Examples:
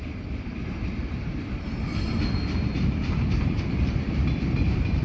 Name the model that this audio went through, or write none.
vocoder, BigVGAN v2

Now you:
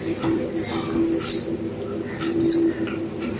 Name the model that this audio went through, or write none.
none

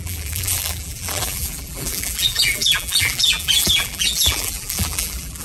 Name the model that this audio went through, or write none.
vocoder, BigVGAN v2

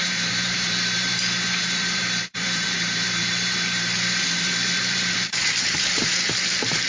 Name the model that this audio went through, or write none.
vocoder, BigVGAN v2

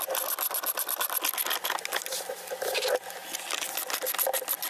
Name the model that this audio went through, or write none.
none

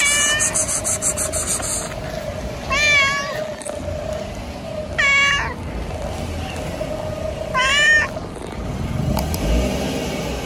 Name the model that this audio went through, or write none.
none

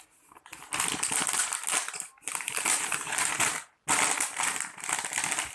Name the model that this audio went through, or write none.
none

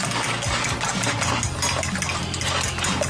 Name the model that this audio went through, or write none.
none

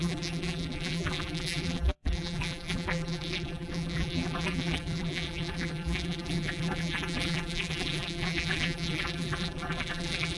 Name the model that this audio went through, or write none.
vocoder, BigVGAN v2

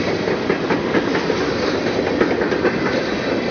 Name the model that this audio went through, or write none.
vocoder, BigVGAN v2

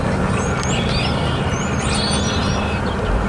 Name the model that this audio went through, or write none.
none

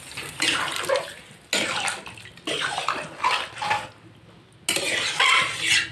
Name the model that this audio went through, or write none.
none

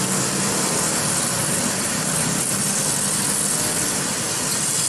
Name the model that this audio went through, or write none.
none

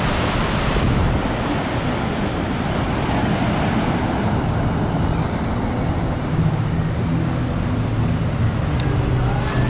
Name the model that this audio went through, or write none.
none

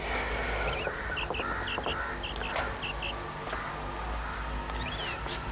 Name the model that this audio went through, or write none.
none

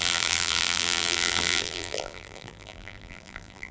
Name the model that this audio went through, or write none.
vocoder, BigVGAN v2